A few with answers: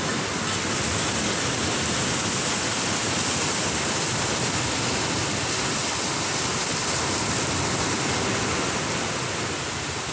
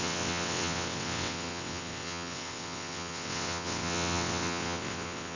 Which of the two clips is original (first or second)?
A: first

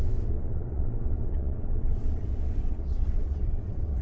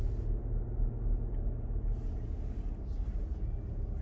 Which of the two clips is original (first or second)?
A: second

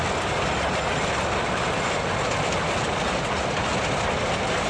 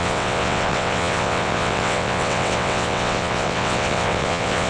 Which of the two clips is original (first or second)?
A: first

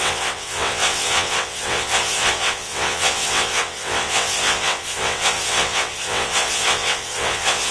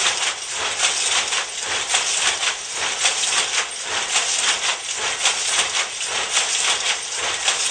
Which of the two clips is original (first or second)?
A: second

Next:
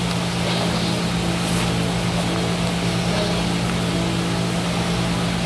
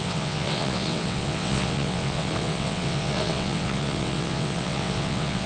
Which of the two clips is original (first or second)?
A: first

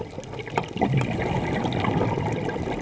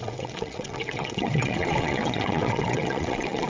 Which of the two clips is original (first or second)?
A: first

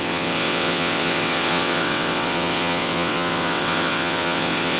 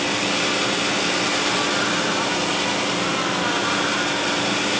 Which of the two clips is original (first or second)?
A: second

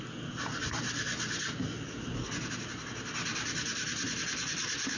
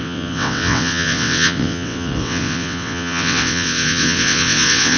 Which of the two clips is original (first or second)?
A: first